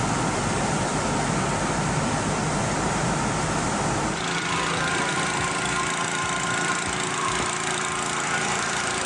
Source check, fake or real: fake